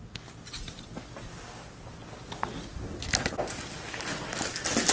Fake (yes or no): no